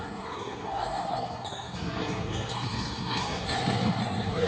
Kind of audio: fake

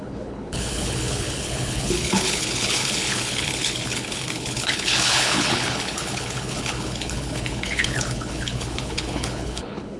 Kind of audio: fake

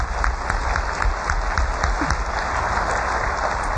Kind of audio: real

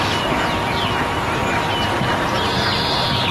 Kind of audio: real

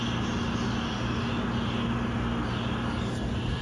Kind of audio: real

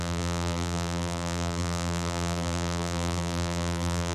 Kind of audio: fake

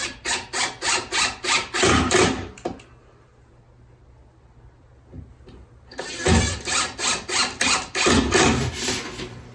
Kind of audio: real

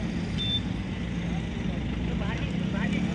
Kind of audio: real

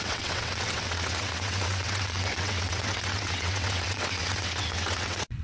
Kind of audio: fake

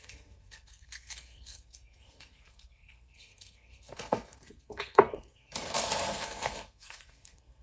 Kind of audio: fake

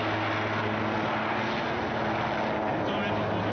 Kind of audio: real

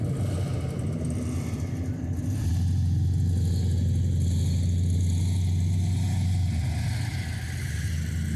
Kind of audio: real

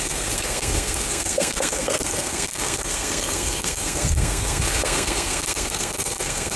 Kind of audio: fake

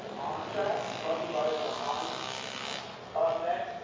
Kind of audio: real